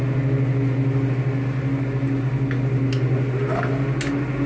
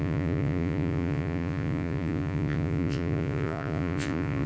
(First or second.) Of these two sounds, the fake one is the second